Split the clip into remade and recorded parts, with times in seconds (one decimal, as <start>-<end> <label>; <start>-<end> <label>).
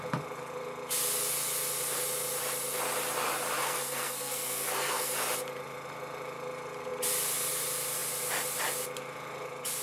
0.0-3.6 recorded; 3.6-5.1 remade; 5.1-9.8 recorded